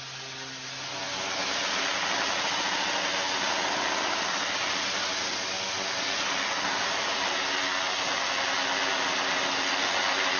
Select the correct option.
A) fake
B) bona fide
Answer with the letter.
B